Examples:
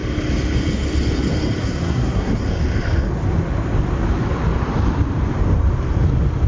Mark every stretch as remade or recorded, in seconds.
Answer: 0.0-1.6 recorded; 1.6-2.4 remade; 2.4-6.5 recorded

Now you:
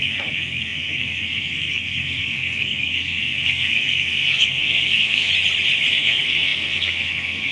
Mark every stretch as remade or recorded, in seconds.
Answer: 0.0-5.3 remade; 5.3-5.9 recorded; 5.9-7.5 remade

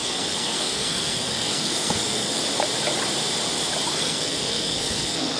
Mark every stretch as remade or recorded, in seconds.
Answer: 0.0-2.4 remade; 2.4-3.9 recorded; 3.9-5.4 remade

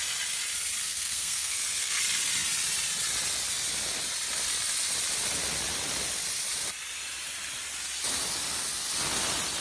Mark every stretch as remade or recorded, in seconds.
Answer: 0.0-0.8 recorded; 0.8-2.0 remade; 2.0-9.6 recorded

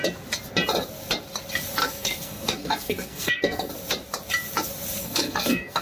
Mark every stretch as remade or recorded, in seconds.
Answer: 0.0-1.8 recorded; 1.8-3.7 remade; 3.7-5.0 recorded; 5.0-5.8 remade

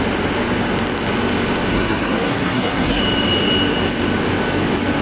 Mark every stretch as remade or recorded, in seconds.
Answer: 0.0-1.7 recorded; 1.7-3.0 remade; 3.0-5.0 recorded

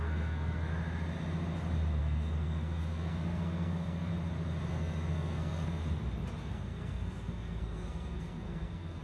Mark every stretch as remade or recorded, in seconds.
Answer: 0.0-0.7 remade; 0.7-2.0 recorded; 2.0-4.1 remade; 4.1-4.7 recorded; 4.7-5.8 remade; 5.8-6.4 recorded; 6.4-9.0 remade

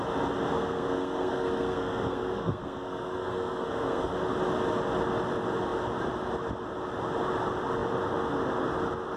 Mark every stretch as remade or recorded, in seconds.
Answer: 0.0-0.5 recorded; 0.5-4.1 remade; 4.1-9.2 recorded